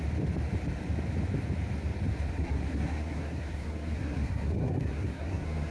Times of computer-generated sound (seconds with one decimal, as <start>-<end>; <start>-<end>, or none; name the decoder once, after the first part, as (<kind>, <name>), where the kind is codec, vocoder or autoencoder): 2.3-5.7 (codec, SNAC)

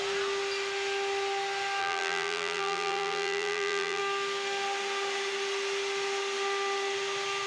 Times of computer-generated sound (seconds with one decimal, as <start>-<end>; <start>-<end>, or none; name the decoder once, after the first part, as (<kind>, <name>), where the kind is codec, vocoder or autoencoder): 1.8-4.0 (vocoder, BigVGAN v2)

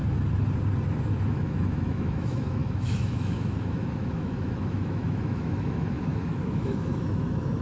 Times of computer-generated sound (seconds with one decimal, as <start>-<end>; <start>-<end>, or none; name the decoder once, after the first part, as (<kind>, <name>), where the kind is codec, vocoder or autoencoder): 1.3-7.6 (autoencoder, DAC-VAE)